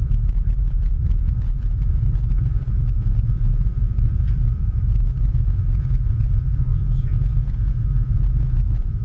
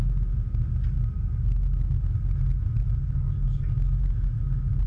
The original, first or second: second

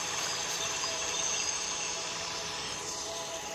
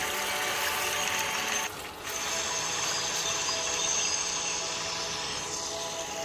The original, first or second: second